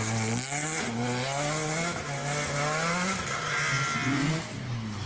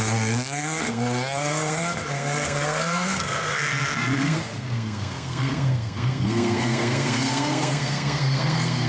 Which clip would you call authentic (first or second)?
first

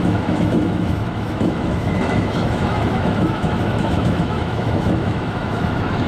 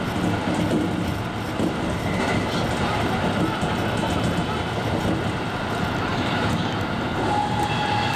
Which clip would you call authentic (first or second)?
second